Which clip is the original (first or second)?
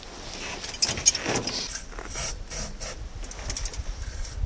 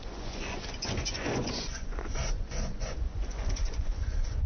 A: first